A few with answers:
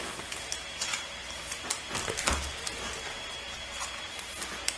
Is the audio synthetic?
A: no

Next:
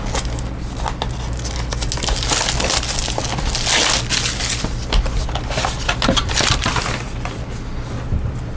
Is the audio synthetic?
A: no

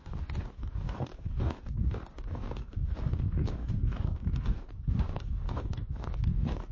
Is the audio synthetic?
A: yes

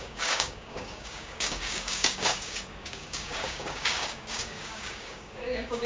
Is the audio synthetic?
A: yes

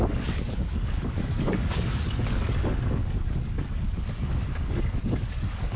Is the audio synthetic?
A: yes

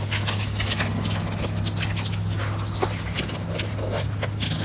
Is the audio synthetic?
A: no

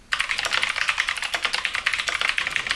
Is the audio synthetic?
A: no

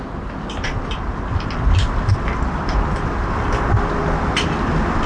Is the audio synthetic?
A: no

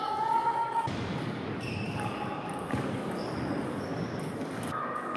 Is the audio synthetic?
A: yes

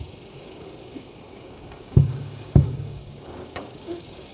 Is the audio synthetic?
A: yes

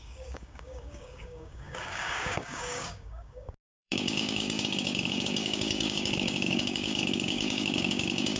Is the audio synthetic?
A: yes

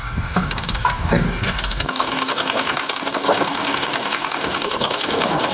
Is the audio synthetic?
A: yes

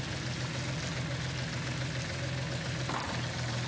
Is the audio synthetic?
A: no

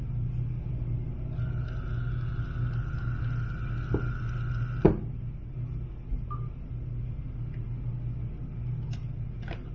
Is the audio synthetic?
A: no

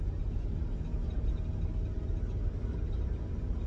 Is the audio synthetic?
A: no